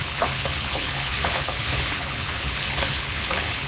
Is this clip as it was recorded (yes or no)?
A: no